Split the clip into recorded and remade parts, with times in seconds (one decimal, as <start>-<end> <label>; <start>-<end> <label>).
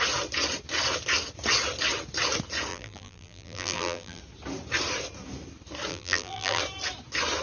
0.0-2.7 recorded; 2.7-4.2 remade; 4.2-5.9 recorded; 5.9-6.6 remade; 6.6-7.4 recorded